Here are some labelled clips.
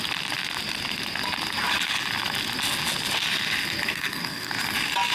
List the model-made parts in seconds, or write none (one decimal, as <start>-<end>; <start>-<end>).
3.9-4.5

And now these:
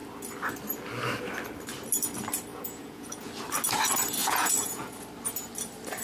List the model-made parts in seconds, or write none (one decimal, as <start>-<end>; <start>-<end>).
2.5-3.3; 4.2-4.9

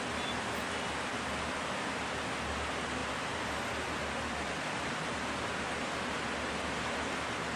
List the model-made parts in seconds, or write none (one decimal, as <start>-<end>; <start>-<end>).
none

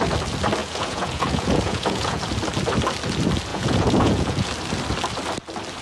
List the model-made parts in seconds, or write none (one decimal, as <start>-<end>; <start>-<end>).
0.6-2.2; 3.5-4.5